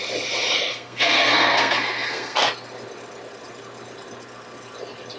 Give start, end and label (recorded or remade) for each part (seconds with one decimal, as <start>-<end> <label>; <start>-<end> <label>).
0.0-0.7 recorded; 0.7-2.4 remade; 2.4-5.2 recorded

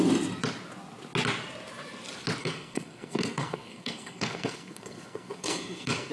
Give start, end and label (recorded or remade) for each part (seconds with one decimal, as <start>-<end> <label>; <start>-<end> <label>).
0.0-2.4 recorded; 2.4-6.1 remade

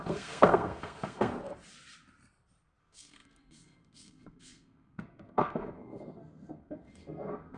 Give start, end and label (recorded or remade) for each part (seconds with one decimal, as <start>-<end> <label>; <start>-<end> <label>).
0.0-1.3 remade; 1.3-2.8 recorded; 2.8-7.6 remade